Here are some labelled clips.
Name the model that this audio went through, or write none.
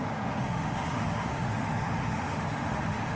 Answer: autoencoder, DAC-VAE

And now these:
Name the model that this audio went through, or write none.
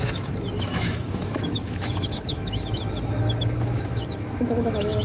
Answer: autoencoder, DAC-VAE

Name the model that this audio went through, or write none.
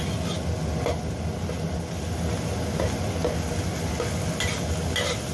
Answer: none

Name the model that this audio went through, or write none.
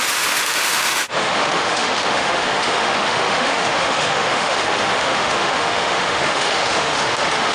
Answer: autoencoder, DAC-VAE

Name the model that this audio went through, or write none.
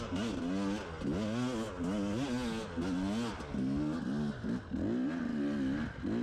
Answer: none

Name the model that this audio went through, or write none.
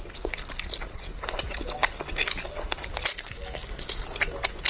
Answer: none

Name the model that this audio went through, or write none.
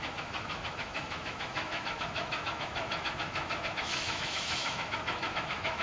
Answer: autoencoder, DAC-VAE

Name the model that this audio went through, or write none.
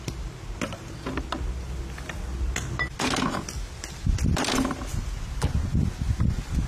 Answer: none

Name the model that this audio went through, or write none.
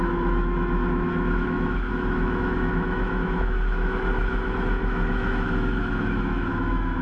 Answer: autoencoder, DAC-VAE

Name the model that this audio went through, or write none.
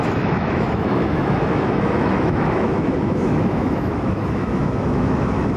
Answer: autoencoder, DAC-VAE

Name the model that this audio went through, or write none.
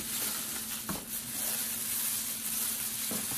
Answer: none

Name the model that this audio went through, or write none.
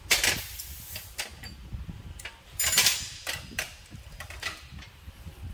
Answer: none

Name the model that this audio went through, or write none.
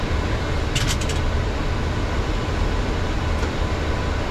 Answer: none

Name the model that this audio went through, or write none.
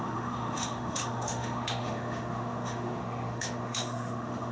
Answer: autoencoder, DAC-VAE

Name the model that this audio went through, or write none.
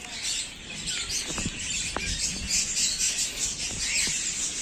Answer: none